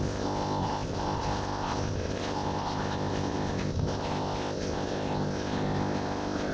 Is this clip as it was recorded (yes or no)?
no